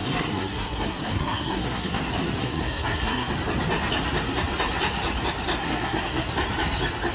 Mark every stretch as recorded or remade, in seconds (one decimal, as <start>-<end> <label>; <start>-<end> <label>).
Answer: 0.0-2.0 remade; 2.0-2.4 recorded; 2.4-3.3 remade; 3.3-5.6 recorded; 5.6-6.3 remade; 6.3-7.1 recorded